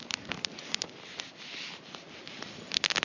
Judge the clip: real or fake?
real